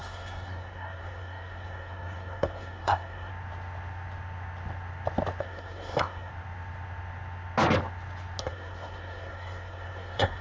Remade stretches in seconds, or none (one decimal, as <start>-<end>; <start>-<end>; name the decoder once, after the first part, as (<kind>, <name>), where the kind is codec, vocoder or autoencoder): 0.0-3.3 (codec, SNAC); 5.4-6.3; 8.4-10.4